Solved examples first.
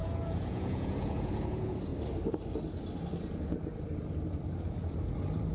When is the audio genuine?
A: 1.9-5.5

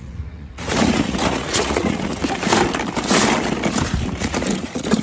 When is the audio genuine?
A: 2.2-4.2

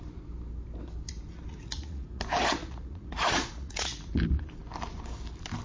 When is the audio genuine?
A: 0.0-1.5; 2.2-2.6; 4.1-5.6

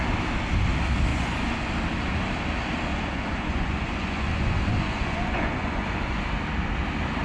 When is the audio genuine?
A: 0.0-1.1; 1.7-2.9; 6.2-7.2

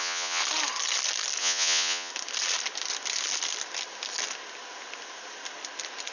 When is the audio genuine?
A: 0.4-1.4; 2.1-6.1